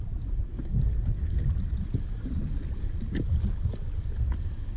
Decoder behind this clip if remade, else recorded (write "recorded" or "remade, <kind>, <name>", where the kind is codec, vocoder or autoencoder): recorded